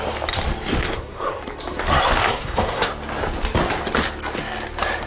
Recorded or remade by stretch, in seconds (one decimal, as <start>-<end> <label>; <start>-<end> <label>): 0.0-0.8 recorded; 0.8-1.4 remade; 1.4-2.2 recorded; 2.2-2.9 remade; 2.9-5.1 recorded